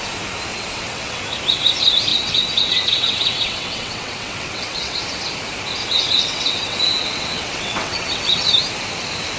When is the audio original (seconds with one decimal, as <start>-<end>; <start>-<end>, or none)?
0.0-0.5; 1.2-2.1; 5.0-5.8; 8.5-9.4